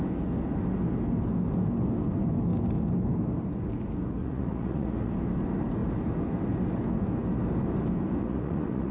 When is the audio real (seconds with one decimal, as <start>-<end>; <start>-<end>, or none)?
0.0-4.2; 5.1-8.2